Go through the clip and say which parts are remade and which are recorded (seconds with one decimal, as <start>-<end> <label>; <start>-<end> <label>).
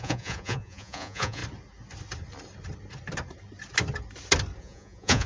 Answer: 0.0-1.4 remade; 1.4-4.6 recorded; 4.6-5.3 remade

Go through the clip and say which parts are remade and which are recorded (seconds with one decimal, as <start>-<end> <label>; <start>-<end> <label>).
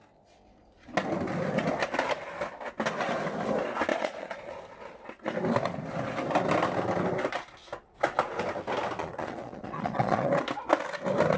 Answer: 0.0-3.9 recorded; 3.9-4.5 remade; 4.5-9.0 recorded; 9.0-10.3 remade; 10.3-11.4 recorded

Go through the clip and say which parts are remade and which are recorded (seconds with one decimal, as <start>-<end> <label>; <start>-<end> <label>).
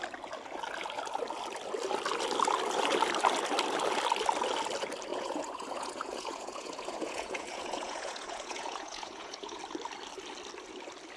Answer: 0.0-5.1 recorded; 5.1-9.6 remade; 9.6-11.2 recorded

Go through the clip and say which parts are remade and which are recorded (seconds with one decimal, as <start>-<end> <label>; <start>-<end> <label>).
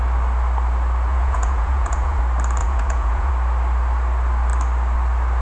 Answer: 0.0-1.1 recorded; 1.1-2.2 remade; 2.2-2.6 recorded; 2.6-3.3 remade; 3.3-5.4 recorded